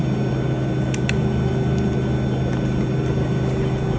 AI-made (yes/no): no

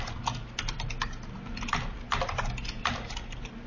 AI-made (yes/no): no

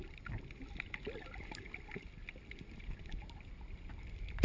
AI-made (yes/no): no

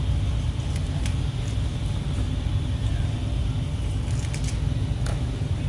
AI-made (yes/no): no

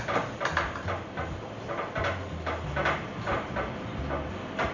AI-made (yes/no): no